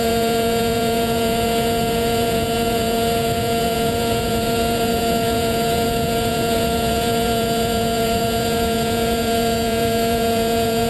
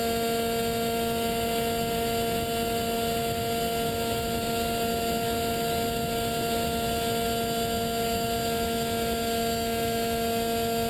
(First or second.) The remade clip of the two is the first